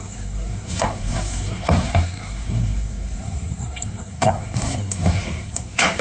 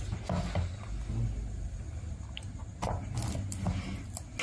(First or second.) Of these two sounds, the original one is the second